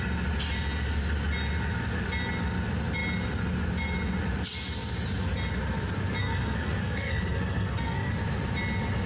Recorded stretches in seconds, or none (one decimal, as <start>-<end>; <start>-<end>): 0.0-6.2; 8.1-9.1